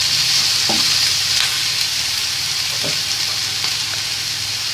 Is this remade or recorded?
recorded